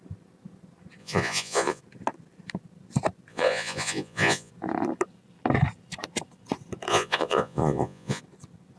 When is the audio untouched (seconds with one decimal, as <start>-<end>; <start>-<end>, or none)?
0.0-1.0; 1.8-3.3; 4.5-6.9; 8.2-8.8